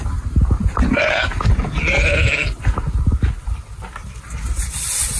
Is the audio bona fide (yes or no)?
yes